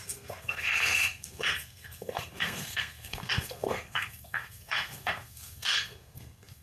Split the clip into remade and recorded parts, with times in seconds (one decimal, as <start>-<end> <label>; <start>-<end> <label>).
0.0-6.6 remade